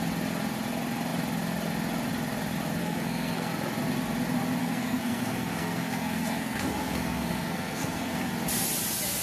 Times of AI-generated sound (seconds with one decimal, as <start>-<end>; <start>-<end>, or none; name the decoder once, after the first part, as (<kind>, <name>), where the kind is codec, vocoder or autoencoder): 2.8-3.5 (codec, SNAC); 4.6-8.3